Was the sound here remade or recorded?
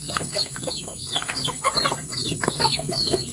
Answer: remade